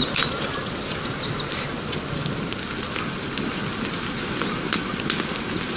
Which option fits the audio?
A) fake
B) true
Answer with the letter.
B